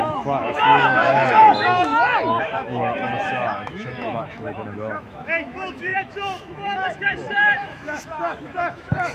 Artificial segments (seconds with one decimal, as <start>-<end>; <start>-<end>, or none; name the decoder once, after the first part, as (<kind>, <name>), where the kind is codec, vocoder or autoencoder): 0.0-1.9 (autoencoder, DAC-VAE); 2.4-9.1